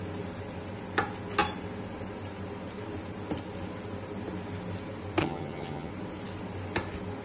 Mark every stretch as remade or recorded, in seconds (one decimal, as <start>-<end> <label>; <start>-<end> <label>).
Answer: 0.0-5.2 recorded; 5.2-5.9 remade; 5.9-7.2 recorded